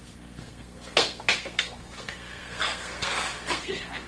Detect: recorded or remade remade